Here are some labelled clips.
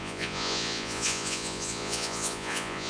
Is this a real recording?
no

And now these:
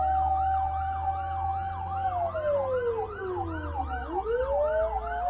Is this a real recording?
yes